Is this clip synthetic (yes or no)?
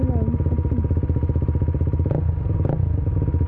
no